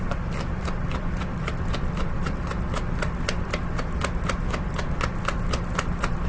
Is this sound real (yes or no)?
yes